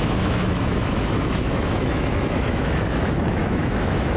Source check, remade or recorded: remade